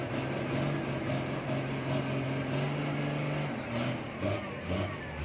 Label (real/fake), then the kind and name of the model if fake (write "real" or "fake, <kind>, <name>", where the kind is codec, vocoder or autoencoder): real